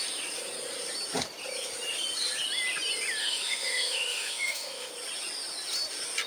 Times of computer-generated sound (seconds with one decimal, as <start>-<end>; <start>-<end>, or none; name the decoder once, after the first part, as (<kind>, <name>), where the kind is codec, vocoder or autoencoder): 3.2-4.9 (autoencoder, DAC-VAE)